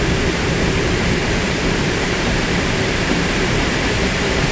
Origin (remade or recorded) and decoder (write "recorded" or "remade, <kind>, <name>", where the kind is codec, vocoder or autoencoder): remade, vocoder, BigVGAN v2